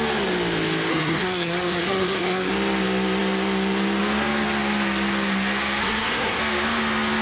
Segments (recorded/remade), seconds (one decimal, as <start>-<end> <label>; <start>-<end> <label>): 0.0-0.9 recorded; 0.9-2.5 remade; 2.5-5.8 recorded; 5.8-6.4 remade; 6.4-7.2 recorded